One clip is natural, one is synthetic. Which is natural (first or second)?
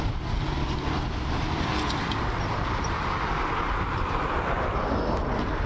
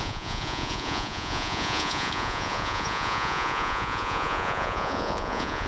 first